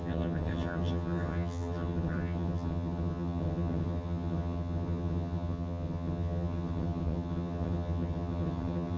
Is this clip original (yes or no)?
no